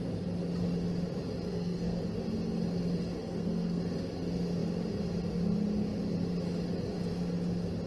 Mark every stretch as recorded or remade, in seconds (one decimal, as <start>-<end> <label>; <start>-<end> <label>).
0.0-1.5 recorded; 1.5-2.0 remade; 2.0-3.2 recorded; 3.2-3.8 remade; 3.8-7.9 recorded